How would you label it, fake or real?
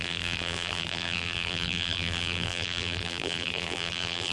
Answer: fake